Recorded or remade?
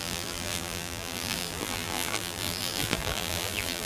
remade